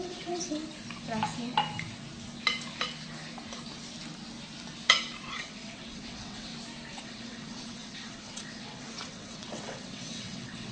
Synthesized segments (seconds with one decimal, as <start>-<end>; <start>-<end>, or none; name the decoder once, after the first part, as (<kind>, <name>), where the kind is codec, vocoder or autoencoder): 0.0-0.6 (vocoder, WaveNeXt); 5.3-6.5; 7.0-10.7